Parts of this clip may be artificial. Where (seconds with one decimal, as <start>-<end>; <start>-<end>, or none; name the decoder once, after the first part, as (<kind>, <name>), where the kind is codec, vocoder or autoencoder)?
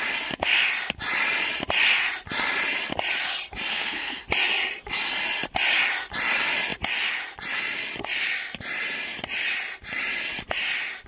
3.7-4.2 (codec, SNAC)